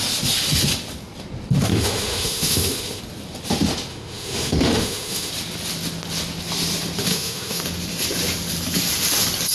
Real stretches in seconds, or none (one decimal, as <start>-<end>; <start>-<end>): 0.0-1.7; 3.0-3.9; 5.3-7.1; 7.6-9.5